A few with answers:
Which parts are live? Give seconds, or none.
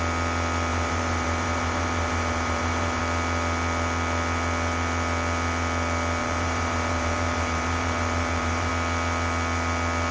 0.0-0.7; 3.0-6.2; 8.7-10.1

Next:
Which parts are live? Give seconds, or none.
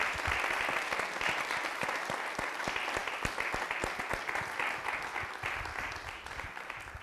0.0-7.0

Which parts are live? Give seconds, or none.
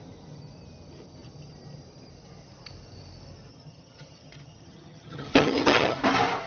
0.0-3.5; 6.0-6.5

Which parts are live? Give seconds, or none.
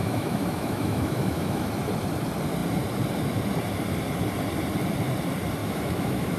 1.7-5.6